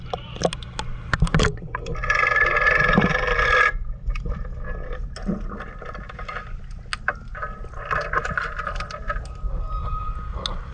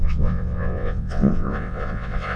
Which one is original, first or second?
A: first